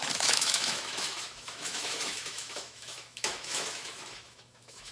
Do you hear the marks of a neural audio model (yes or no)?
yes